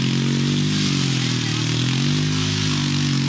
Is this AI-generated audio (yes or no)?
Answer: no